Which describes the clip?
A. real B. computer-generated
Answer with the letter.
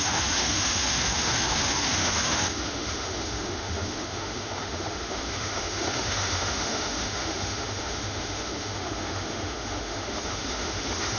B